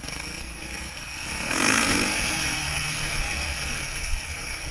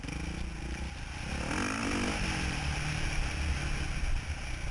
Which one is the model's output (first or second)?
first